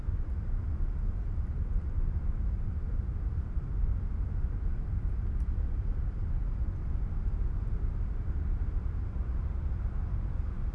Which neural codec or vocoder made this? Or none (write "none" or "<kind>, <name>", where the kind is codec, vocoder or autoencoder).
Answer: none